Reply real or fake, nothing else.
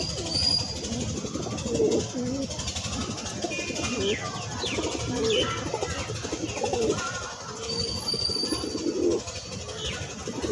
real